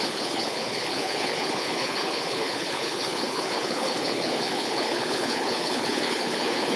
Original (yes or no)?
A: no